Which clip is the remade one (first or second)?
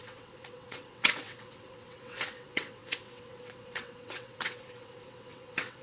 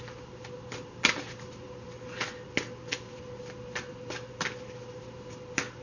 first